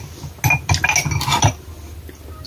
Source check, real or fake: real